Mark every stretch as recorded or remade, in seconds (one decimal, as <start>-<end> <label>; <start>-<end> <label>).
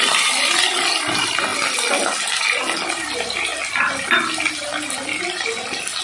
0.0-1.5 remade; 1.5-2.9 recorded; 2.9-3.5 remade; 3.5-6.0 recorded